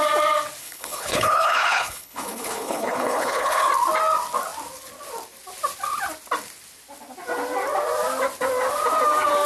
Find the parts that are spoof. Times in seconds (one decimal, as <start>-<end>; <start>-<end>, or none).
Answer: 0.6-3.7